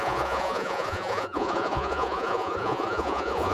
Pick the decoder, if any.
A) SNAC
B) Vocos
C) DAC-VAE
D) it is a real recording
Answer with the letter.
B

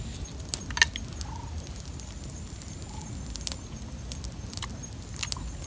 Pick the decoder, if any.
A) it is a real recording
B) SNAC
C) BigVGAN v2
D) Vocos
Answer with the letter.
A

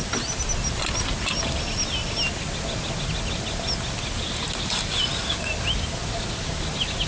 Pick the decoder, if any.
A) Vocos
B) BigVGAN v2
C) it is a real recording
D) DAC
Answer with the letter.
C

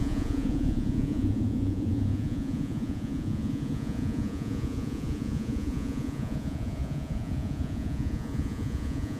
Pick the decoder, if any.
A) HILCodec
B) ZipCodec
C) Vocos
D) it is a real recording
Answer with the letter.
C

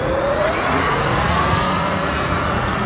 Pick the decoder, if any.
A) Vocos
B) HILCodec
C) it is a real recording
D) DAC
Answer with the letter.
A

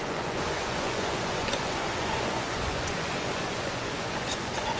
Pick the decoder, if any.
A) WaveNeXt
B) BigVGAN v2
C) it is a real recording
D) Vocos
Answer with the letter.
D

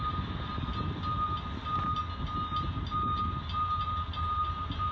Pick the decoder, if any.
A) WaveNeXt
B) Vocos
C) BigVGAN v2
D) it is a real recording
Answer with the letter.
D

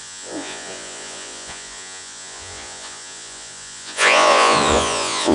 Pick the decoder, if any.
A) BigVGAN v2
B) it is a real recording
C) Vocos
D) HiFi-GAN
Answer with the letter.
C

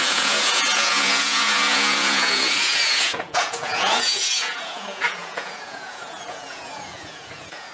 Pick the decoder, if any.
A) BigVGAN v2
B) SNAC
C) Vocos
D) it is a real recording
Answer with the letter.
C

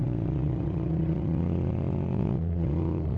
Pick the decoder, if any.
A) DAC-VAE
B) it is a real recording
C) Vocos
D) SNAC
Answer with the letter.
C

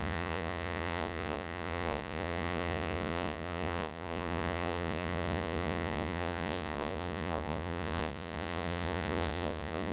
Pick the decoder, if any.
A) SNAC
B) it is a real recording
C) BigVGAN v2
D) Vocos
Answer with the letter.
D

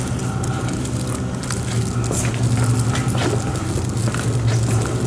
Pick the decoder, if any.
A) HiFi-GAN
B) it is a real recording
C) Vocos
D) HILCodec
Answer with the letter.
B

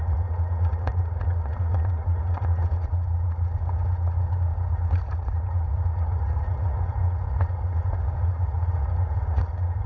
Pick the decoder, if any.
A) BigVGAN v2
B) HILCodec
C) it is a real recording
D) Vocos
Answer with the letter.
D